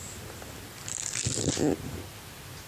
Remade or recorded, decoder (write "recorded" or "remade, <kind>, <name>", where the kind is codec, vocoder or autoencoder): recorded